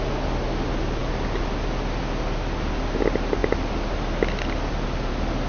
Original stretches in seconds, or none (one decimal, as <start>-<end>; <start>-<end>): 0.0-5.5